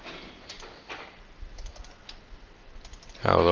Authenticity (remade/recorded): recorded